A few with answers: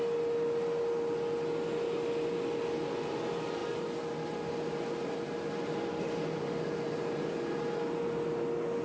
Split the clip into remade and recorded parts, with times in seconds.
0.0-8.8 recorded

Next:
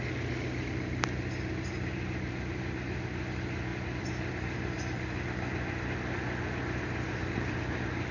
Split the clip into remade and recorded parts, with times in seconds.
0.0-8.1 recorded

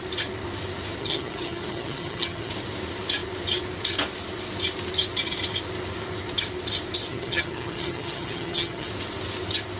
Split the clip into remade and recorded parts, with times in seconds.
0.0-1.0 recorded; 1.0-2.5 remade; 2.5-7.1 recorded; 7.1-8.9 remade; 8.9-9.8 recorded